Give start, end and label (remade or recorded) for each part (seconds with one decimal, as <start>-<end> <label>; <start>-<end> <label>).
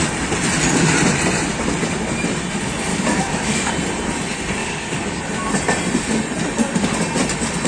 0.0-2.9 recorded; 2.9-3.7 remade; 3.7-4.6 recorded; 4.6-5.2 remade; 5.2-7.7 recorded